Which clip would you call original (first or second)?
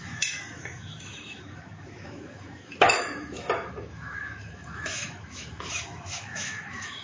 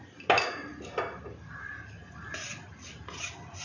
second